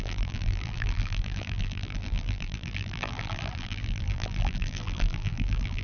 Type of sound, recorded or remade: remade